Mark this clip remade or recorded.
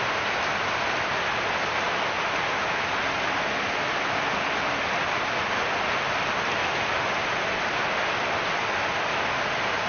recorded